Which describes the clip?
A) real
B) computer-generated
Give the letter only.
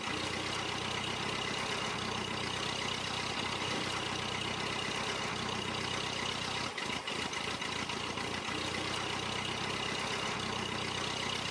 A